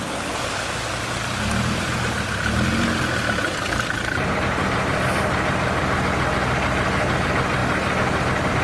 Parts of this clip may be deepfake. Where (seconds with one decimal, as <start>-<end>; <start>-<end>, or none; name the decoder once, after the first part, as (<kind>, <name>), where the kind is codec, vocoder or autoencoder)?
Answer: none